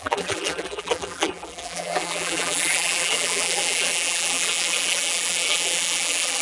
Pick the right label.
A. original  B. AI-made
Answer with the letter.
B